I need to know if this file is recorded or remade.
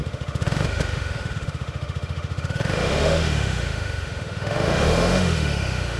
remade